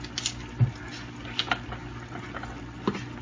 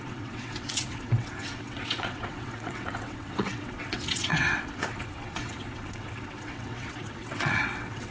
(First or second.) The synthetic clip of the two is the second